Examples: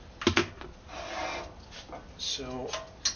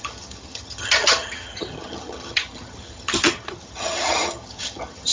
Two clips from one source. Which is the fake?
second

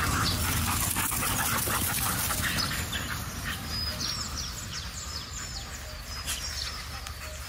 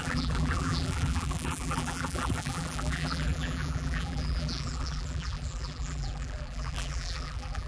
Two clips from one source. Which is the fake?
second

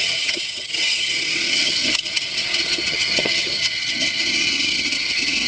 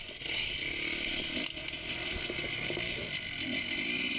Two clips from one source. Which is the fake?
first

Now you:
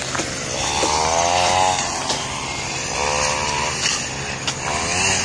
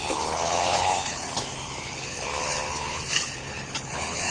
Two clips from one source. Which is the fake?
second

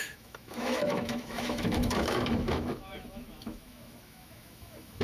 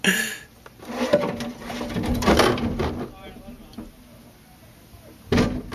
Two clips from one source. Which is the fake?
first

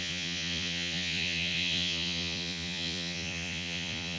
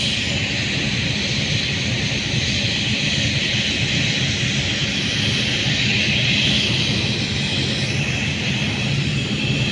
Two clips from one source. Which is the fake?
first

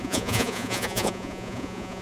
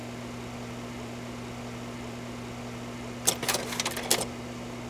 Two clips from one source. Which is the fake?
first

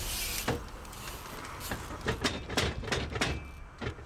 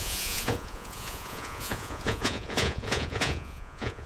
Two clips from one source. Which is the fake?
second